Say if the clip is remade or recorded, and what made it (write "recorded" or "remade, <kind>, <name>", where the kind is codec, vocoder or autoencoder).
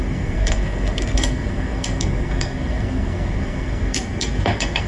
remade, codec, SNAC